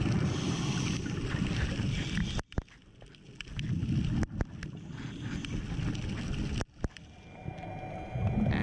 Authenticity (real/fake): real